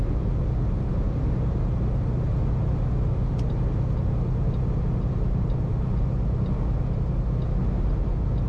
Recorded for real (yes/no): yes